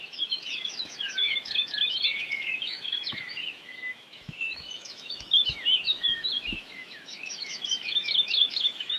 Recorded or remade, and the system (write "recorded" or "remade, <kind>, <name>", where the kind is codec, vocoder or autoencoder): remade, autoencoder, DAC-VAE